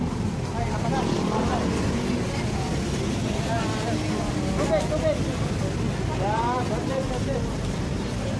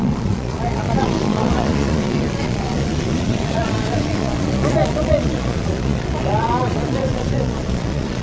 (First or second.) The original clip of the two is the first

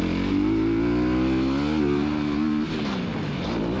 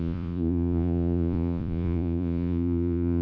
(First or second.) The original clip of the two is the first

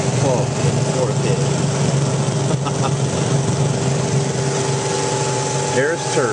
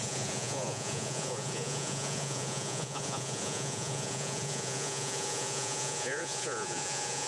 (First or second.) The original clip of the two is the first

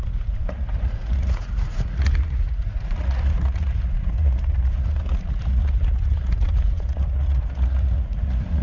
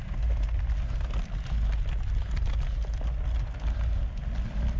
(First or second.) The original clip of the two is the second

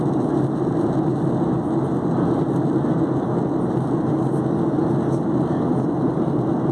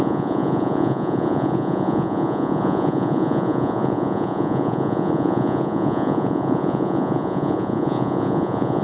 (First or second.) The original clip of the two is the first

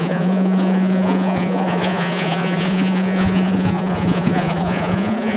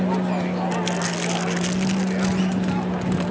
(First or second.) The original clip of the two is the second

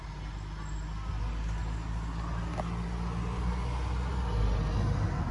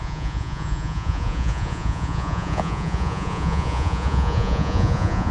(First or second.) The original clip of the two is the first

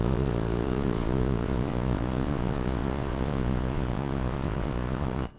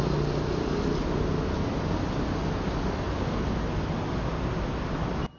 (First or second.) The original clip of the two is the second